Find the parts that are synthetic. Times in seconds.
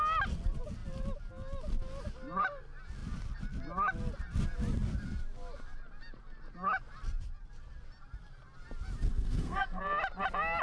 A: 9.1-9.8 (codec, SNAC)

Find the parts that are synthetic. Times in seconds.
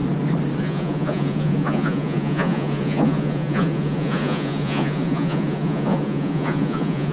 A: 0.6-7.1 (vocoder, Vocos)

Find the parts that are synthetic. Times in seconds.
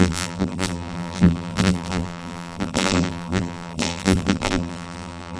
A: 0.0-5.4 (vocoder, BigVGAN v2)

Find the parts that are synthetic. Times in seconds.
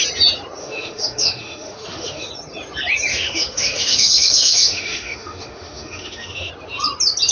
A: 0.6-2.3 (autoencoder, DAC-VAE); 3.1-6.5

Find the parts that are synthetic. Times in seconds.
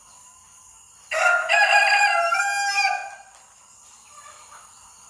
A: 1.4-2.4 (vocoder, BigVGAN v2); 3.0-3.6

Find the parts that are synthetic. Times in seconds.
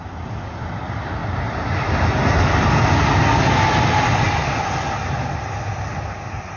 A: none